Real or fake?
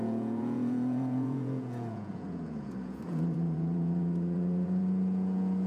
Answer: fake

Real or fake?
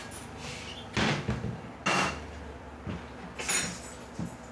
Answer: real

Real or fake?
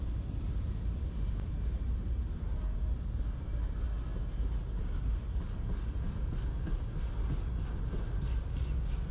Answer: real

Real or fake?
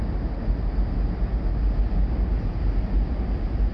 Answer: real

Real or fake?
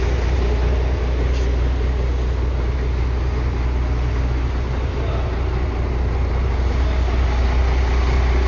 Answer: real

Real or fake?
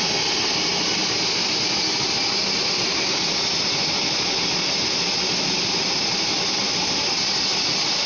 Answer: real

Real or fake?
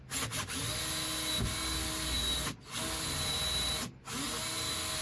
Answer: real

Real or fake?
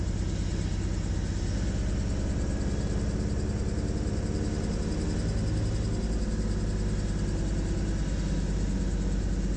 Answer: real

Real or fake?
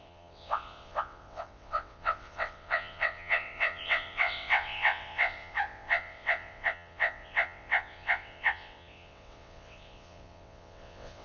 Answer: fake